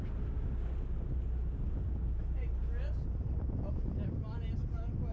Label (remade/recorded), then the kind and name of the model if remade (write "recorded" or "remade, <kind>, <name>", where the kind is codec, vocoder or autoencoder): recorded